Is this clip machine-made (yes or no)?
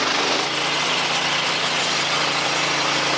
no